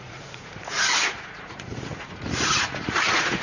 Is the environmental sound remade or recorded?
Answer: remade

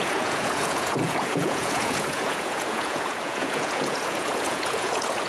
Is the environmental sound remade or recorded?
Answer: remade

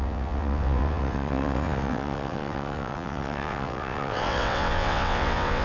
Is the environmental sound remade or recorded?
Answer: remade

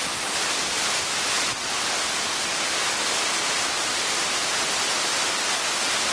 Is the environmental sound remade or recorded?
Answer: recorded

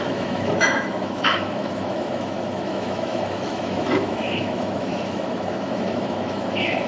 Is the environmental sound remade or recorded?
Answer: remade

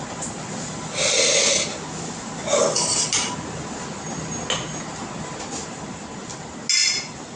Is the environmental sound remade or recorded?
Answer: recorded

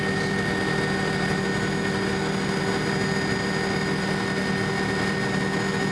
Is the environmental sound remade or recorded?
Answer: recorded